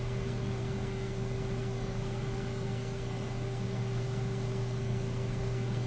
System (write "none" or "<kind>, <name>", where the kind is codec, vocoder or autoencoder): codec, SNAC